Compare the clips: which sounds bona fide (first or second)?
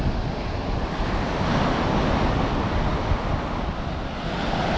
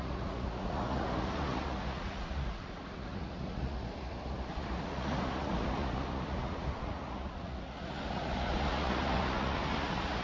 first